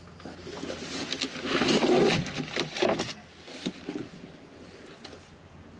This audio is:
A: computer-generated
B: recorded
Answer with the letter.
B